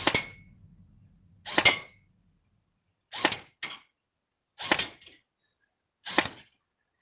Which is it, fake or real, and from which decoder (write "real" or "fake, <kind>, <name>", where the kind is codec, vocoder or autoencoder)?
real